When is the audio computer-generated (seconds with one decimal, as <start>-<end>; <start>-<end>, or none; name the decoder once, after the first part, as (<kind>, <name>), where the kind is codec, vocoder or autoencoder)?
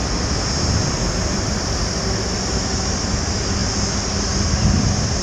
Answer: none